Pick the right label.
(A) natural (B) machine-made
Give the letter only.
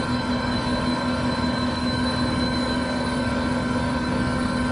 B